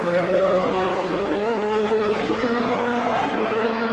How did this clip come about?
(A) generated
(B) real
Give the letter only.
A